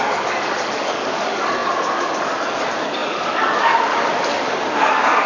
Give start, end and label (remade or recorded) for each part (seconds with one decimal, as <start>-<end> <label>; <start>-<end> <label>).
0.0-5.3 remade